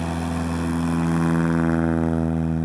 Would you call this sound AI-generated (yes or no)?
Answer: no